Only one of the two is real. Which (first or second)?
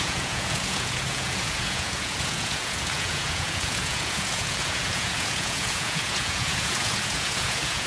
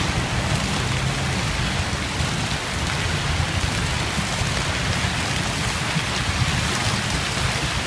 second